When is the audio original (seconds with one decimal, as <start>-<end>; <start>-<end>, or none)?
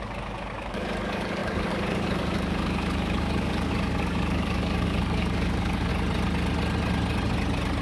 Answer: 5.9-7.8